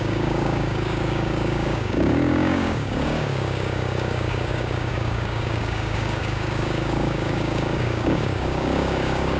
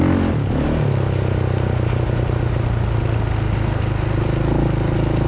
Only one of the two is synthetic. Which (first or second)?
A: first